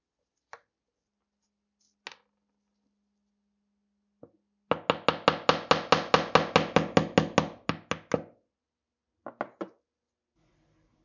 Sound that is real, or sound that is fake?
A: real